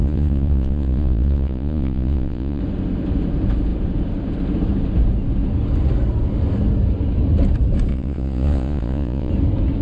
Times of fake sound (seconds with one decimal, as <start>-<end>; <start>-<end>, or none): 0.0-2.6; 7.9-9.3